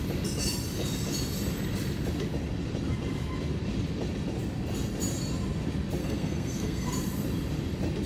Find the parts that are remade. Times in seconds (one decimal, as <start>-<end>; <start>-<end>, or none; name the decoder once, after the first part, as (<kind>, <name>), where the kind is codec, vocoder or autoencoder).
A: 6.0-6.9 (codec, SNAC)